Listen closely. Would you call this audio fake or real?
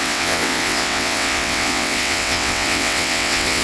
fake